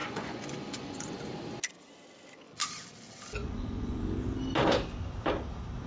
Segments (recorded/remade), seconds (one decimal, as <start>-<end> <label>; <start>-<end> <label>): 0.0-1.2 remade; 1.2-3.4 recorded; 3.4-4.0 remade; 4.0-5.9 recorded